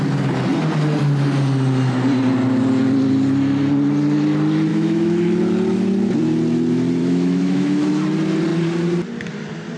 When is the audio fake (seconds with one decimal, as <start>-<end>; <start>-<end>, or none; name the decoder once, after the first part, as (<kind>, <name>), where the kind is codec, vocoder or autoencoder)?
4.7-5.4 (autoencoder, DAC-VAE); 7.0-7.9